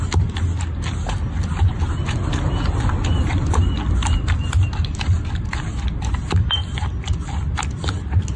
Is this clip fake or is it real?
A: real